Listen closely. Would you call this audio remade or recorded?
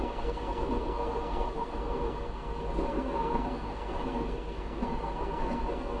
remade